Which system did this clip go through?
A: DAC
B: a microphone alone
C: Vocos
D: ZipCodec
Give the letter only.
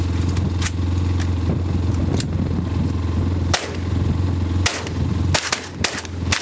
B